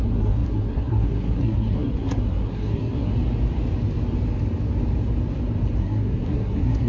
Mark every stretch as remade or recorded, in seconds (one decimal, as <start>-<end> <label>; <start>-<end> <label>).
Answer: 0.0-3.1 remade; 3.1-5.8 recorded; 5.8-6.9 remade